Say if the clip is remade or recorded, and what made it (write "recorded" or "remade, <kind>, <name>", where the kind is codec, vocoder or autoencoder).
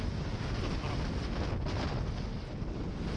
recorded